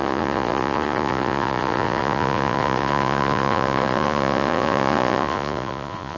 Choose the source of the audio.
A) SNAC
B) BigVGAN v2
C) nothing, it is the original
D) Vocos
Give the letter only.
D